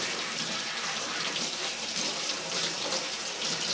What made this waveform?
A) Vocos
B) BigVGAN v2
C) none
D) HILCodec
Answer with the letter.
B